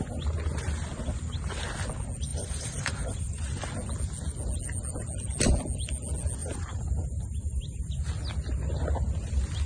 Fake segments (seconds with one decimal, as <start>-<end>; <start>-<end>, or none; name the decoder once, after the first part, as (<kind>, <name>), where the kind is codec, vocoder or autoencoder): 2.3-3.4 (vocoder, BigVGAN v2); 6.4-8.0